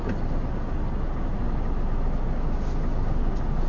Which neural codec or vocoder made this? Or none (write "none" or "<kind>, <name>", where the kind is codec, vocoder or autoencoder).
none